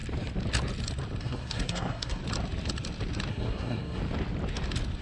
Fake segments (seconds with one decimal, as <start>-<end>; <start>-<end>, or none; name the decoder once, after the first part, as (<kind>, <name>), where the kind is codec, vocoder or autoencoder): 1.2-2.2 (codec, SNAC); 3.3-4.0